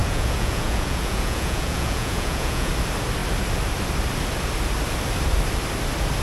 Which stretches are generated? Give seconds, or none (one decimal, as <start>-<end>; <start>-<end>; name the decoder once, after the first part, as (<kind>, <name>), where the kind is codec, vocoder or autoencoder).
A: 0.0-2.7 (vocoder, Vocos)